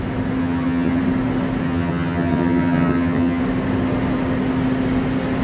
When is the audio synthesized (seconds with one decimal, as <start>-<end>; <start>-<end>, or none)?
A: 0.4-1.0; 1.6-3.4